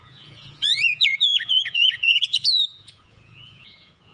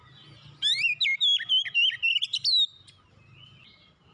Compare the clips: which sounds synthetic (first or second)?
first